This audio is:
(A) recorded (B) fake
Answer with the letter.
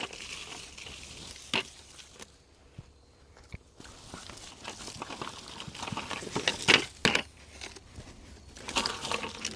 A